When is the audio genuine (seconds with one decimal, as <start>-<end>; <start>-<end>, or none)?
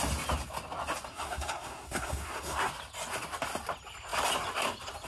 0.0-1.1; 2.7-5.1